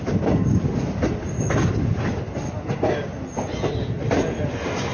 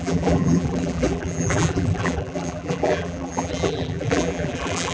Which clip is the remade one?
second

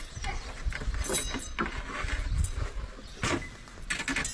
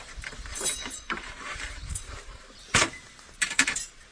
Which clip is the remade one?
second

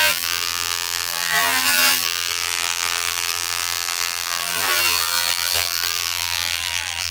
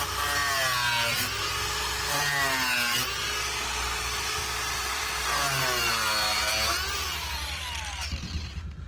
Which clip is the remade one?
first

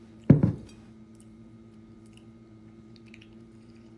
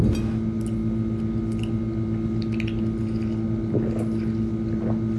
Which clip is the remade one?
first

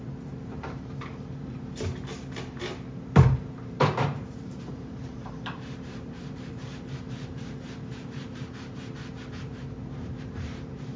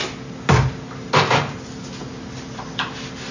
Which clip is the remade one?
first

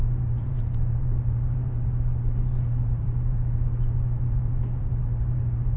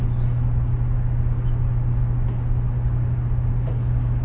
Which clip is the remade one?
first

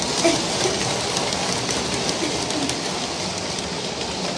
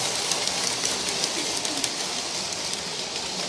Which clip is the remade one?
first